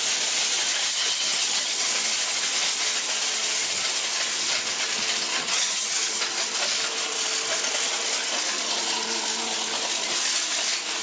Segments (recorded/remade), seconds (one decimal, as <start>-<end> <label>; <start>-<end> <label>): 0.0-0.9 recorded; 0.9-1.9 remade; 1.9-5.3 recorded; 5.3-6.1 remade; 6.1-11.0 recorded